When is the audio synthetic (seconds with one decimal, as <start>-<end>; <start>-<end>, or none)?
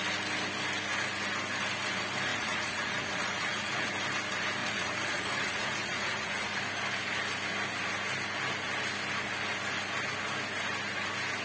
2.3-3.9; 4.6-6.6